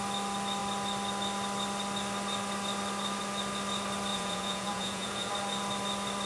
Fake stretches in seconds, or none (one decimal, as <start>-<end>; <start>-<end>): 4.1-5.3